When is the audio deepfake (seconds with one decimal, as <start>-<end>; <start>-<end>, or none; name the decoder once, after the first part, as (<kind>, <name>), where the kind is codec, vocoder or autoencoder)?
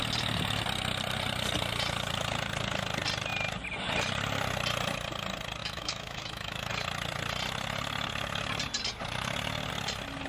5.6-6.7 (autoencoder, DAC-VAE)